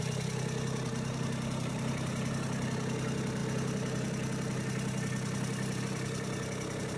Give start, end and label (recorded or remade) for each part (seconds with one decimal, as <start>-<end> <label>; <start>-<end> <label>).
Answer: 0.0-0.9 recorded; 0.9-2.3 remade; 2.3-7.0 recorded